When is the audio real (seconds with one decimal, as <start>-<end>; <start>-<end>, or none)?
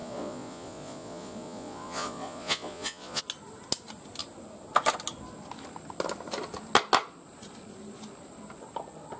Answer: 3.2-9.2